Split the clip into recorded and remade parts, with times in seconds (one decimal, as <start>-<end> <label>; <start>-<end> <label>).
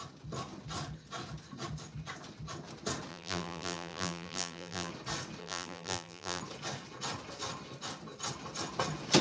0.0-3.1 recorded; 3.1-4.9 remade; 4.9-5.4 recorded; 5.4-6.4 remade; 6.4-9.2 recorded